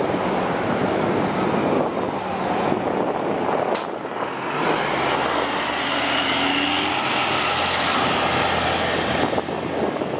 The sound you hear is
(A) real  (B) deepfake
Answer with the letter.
A